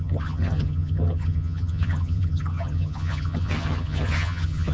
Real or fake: fake